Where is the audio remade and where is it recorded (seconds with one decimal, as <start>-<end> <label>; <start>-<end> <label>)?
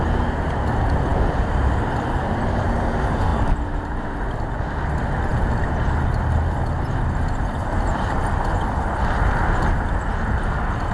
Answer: 0.0-10.9 recorded